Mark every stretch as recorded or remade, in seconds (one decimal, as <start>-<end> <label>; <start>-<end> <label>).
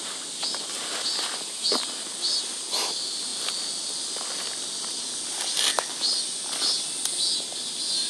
0.0-3.3 remade; 3.3-5.7 recorded; 5.7-8.1 remade